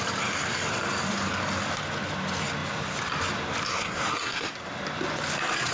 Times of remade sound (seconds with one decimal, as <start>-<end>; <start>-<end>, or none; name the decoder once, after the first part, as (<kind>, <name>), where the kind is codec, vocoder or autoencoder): 3.7-4.5 (codec, SNAC)